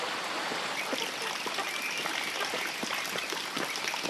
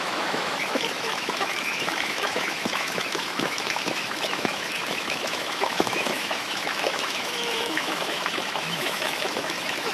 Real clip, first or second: first